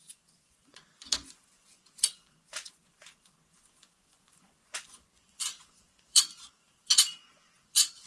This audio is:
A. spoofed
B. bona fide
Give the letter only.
A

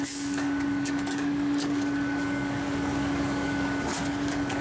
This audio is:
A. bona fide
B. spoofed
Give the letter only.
B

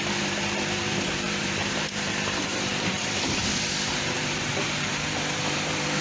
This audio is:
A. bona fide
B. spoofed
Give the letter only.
B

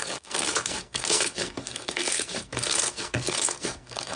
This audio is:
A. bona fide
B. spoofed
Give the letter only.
B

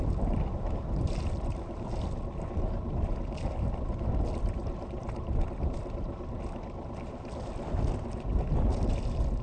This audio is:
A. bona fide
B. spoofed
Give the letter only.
A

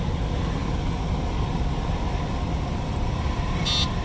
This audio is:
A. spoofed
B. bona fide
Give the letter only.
B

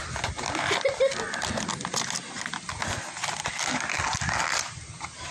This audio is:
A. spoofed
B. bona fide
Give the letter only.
B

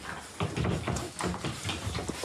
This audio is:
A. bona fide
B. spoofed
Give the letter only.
A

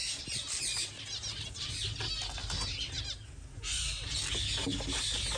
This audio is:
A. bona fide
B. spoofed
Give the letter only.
A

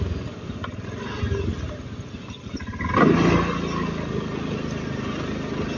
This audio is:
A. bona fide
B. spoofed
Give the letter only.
A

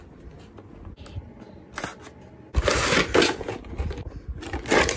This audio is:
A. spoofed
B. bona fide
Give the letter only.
B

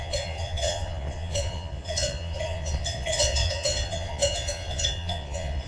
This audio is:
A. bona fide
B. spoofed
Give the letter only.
B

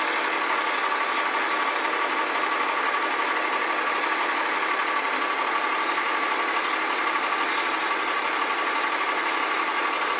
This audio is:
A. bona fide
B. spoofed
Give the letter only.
A